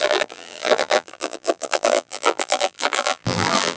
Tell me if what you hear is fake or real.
fake